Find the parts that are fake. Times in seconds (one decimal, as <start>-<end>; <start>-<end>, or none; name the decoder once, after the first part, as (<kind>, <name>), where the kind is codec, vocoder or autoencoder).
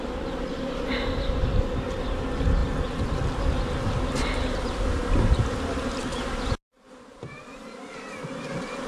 none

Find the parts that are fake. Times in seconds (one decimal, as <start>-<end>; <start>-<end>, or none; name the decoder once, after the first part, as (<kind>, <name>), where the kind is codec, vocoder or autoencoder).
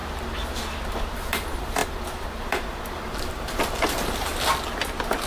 0.9-4.3 (vocoder, BigVGAN v2)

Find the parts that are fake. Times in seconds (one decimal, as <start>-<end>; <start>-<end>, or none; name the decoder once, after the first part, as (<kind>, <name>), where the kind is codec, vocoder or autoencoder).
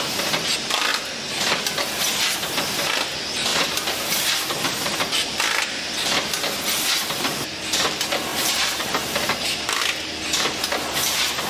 8.3-9.8 (vocoder, BigVGAN v2)